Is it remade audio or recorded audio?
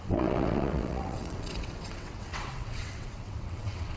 remade